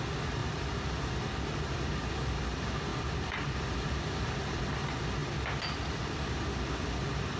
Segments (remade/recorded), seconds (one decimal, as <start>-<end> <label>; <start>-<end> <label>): 0.0-0.4 recorded; 0.4-0.9 remade; 0.9-2.9 recorded; 2.9-4.6 remade; 4.6-7.4 recorded